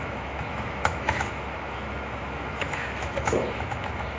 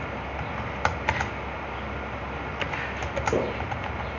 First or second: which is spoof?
first